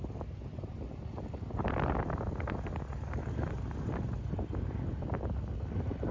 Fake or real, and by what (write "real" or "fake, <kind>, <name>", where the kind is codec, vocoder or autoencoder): real